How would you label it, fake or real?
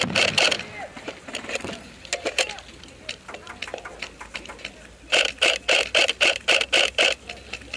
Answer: real